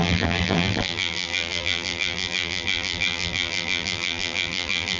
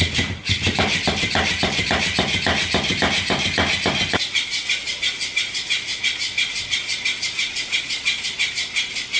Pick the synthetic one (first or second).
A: first